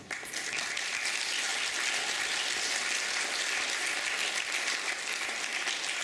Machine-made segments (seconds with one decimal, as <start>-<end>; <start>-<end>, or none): none